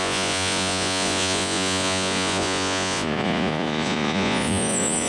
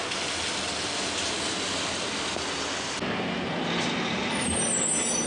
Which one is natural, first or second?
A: second